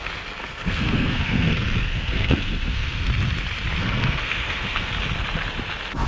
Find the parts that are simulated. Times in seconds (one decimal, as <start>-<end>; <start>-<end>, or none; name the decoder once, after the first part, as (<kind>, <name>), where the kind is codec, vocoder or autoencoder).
0.4-3.1 (codec, SNAC); 3.8-4.9